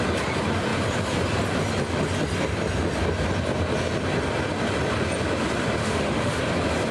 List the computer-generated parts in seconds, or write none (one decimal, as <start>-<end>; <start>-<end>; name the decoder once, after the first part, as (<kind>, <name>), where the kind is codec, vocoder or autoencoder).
5.8-6.4 (autoencoder, DAC-VAE)